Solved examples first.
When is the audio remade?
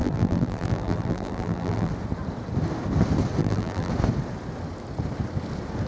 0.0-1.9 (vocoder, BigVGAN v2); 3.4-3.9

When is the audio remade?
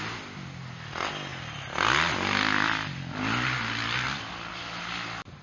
none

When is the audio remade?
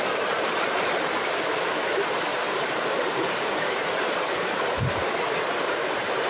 2.3-6.3 (vocoder, BigVGAN v2)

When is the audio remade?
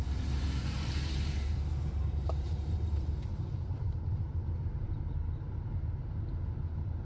0.0-5.2 (vocoder, BigVGAN v2)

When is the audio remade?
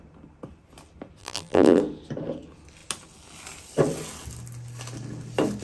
1.2-1.8 (vocoder, BigVGAN v2)